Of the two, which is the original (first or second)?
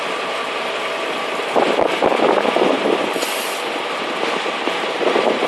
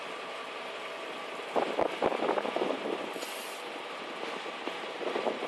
second